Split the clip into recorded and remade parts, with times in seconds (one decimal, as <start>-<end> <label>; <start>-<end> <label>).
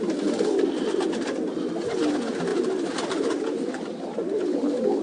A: 0.0-5.0 recorded